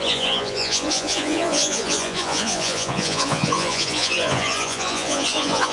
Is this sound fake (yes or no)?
yes